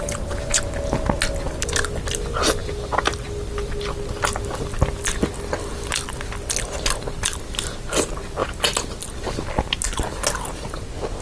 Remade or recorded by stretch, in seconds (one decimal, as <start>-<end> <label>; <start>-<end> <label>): 0.0-11.2 recorded